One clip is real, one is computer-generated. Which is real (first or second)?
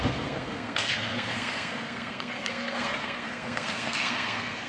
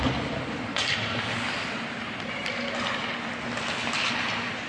second